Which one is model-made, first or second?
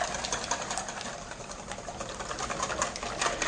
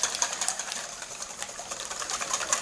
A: second